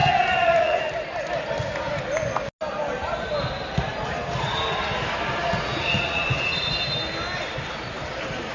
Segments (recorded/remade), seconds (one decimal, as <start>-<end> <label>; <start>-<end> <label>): 0.0-0.8 remade; 0.8-5.4 recorded; 5.4-6.7 remade; 6.7-8.5 recorded